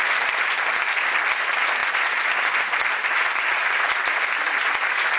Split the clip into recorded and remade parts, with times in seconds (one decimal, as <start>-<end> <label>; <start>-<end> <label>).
0.0-5.2 recorded

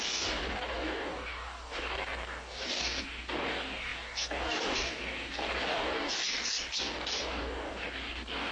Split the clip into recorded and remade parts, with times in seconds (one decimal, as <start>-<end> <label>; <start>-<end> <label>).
0.0-8.5 remade